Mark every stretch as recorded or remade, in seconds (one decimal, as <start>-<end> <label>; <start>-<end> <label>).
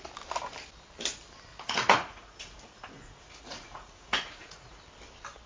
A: 0.0-1.5 recorded; 1.5-4.8 remade; 4.8-5.5 recorded